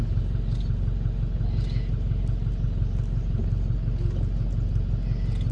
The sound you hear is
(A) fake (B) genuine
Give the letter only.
B